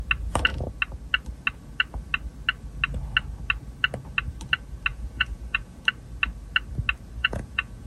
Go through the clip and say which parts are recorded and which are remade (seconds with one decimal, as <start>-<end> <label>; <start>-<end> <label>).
0.0-4.9 recorded; 4.9-5.8 remade; 5.8-7.2 recorded; 7.2-7.9 remade

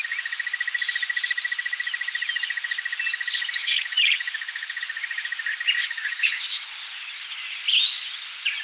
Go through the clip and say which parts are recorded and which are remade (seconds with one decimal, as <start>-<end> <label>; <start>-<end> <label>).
0.0-3.6 recorded; 3.6-4.8 remade; 4.8-5.8 recorded; 5.8-6.4 remade; 6.4-8.6 recorded

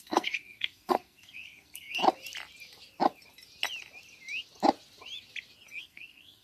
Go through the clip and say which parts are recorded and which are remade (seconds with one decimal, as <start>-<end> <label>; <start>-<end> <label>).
0.0-2.0 remade; 2.0-5.8 recorded; 5.8-6.4 remade

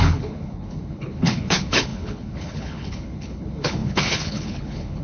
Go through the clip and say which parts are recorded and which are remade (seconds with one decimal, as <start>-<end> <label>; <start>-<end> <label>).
0.0-5.0 remade

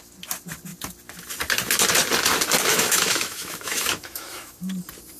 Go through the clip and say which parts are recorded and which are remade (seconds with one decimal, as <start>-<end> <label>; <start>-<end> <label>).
0.0-2.7 recorded; 2.7-4.6 remade; 4.6-5.2 recorded

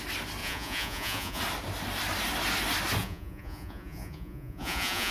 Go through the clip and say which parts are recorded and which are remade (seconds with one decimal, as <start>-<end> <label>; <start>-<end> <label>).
0.0-0.4 recorded; 0.4-1.4 remade; 1.4-3.0 recorded; 3.0-5.1 remade

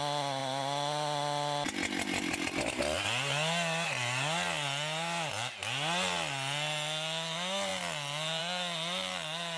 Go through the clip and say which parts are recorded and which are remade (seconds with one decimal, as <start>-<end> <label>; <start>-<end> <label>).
0.0-9.6 recorded